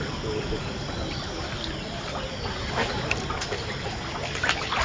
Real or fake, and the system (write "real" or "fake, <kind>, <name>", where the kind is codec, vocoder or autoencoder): real